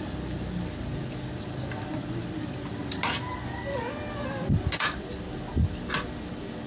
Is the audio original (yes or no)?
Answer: yes